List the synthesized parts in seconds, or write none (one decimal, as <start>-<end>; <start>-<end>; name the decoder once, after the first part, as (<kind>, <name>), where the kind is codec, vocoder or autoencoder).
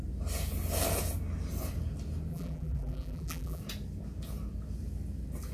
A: 2.3-3.6 (vocoder, BigVGAN v2)